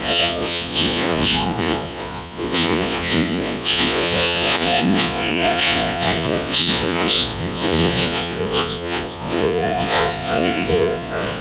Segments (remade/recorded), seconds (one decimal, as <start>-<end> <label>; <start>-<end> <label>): 0.0-11.4 remade